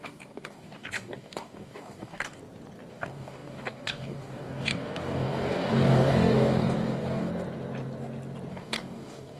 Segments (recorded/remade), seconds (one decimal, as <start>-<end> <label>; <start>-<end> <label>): 0.0-2.4 remade; 2.4-2.9 recorded; 2.9-7.3 remade; 7.3-8.5 recorded; 8.5-9.4 remade